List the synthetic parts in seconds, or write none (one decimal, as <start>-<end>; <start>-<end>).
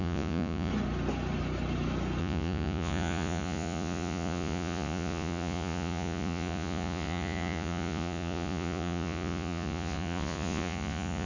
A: 0.0-0.7; 2.2-11.3